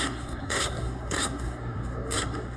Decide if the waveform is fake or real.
fake